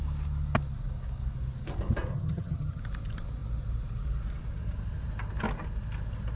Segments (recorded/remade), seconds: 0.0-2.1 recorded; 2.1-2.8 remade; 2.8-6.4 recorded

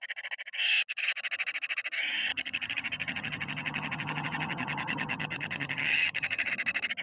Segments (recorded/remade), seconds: 0.0-2.3 recorded; 2.3-6.5 remade; 6.5-7.0 recorded